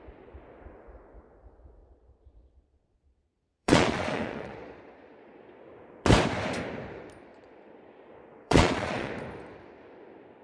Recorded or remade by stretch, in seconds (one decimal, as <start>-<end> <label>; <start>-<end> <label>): 0.0-1.8 recorded; 1.8-5.6 remade; 5.6-7.3 recorded; 7.3-9.1 remade; 9.1-10.4 recorded